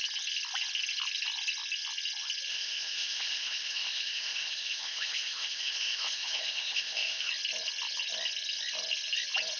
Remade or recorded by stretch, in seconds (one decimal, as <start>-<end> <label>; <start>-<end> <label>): 0.0-2.5 recorded; 2.5-7.3 remade; 7.3-9.6 recorded